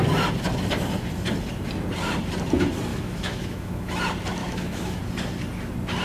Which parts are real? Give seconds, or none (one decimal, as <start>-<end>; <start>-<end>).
0.0-2.9; 3.9-4.4; 5.0-6.0